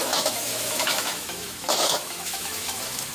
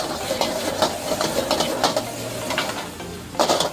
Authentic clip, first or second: second